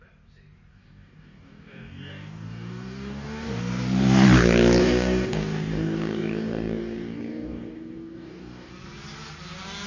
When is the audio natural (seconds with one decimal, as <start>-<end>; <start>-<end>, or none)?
0.0-0.7; 3.6-4.8; 8.7-9.9